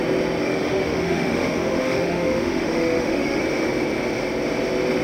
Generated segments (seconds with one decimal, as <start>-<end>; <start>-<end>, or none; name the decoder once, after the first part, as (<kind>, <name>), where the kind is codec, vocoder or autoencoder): 0.4-3.4 (autoencoder, DAC-VAE)

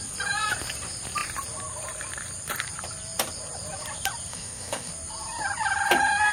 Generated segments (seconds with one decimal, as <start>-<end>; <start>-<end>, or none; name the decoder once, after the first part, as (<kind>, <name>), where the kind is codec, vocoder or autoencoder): 4.3-4.9 (autoencoder, DAC-VAE)

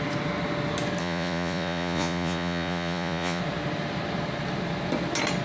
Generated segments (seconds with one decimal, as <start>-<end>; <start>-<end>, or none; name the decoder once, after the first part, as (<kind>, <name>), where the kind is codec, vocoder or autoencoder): 1.0-3.4 (vocoder, Vocos)

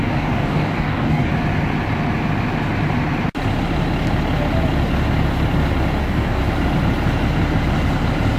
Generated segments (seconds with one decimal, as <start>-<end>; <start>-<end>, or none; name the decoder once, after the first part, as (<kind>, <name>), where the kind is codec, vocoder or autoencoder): 0.0-1.3 (codec, DAC); 6.0-6.4

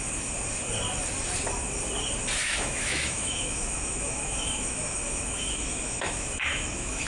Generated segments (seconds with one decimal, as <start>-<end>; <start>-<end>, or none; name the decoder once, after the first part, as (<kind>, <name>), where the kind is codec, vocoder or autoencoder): 2.4-7.1 (autoencoder, DAC-VAE)

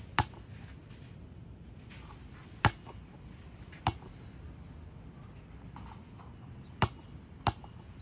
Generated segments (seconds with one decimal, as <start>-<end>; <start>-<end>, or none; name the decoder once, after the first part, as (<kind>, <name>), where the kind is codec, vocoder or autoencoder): none

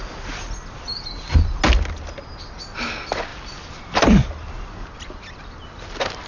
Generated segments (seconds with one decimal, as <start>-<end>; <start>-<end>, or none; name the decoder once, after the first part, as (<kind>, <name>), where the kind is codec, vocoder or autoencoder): 3.3-4.5 (vocoder, BigVGAN v2)

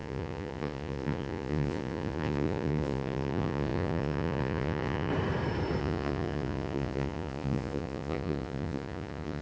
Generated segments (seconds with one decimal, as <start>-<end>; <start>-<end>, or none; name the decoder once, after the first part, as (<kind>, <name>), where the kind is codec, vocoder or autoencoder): 0.0-5.1 (vocoder, Vocos); 5.8-9.4